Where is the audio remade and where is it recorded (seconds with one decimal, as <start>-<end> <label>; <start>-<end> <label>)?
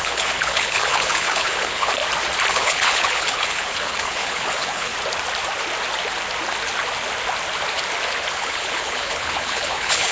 0.0-2.0 remade; 2.0-2.5 recorded; 2.5-4.9 remade; 4.9-8.3 recorded; 8.3-10.1 remade